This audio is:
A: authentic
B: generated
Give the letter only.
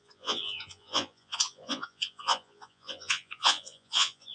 B